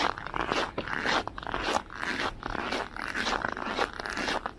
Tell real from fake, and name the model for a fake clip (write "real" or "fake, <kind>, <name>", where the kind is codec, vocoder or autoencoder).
real